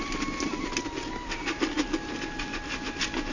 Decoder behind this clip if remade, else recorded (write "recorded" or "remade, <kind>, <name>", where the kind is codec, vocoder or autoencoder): recorded